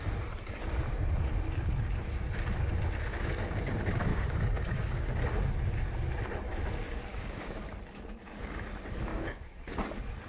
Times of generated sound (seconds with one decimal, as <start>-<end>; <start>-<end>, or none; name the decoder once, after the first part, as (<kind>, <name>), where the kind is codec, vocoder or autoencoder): 4.1-5.2 (codec, DAC); 7.1-7.6; 9.1-9.6